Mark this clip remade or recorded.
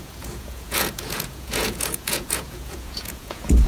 remade